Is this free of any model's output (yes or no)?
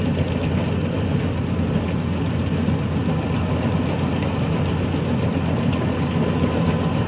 yes